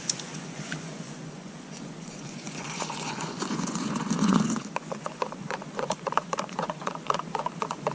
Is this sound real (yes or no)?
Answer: no